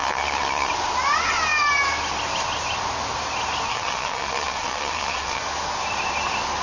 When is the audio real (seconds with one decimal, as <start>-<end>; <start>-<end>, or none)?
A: 0.7-3.7; 5.4-6.6